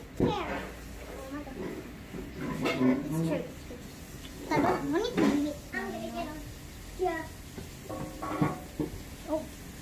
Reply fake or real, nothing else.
real